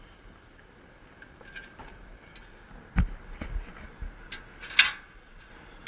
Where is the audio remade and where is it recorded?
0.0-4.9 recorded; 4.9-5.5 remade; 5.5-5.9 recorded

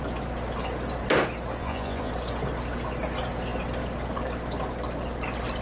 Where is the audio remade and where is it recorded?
0.0-1.6 recorded; 1.6-2.1 remade; 2.1-5.6 recorded

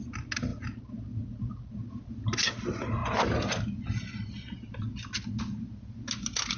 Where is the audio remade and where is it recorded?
0.0-6.6 recorded

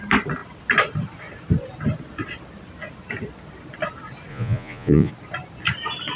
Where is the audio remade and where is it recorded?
0.0-4.3 recorded; 4.3-5.1 remade; 5.1-6.2 recorded

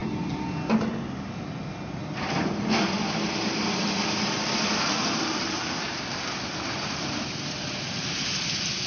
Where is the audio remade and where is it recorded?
0.0-8.9 recorded

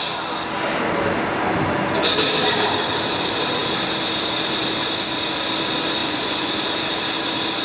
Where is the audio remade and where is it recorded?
0.0-6.0 recorded; 6.0-6.5 remade; 6.5-7.6 recorded

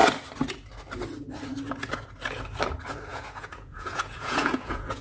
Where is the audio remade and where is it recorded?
0.0-3.1 recorded; 3.1-5.0 remade